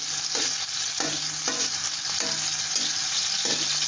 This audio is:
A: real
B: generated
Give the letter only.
A